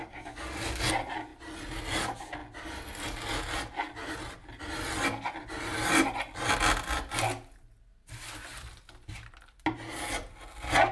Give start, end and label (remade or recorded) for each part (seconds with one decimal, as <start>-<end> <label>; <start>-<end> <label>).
0.0-0.8 remade; 0.8-10.9 recorded